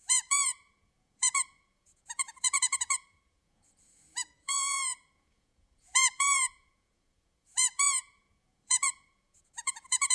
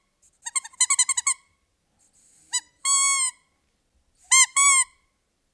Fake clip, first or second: first